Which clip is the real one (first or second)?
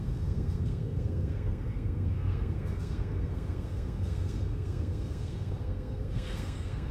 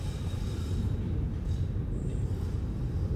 second